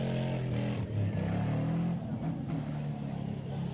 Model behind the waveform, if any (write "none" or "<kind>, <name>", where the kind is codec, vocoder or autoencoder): none